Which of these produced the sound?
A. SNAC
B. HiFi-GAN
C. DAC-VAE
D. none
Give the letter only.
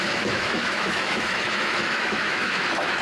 C